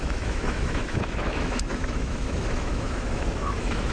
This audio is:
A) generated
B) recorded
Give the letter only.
A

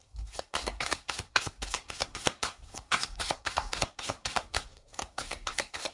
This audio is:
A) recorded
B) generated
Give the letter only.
B